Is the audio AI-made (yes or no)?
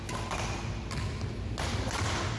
no